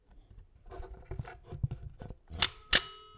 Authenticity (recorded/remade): recorded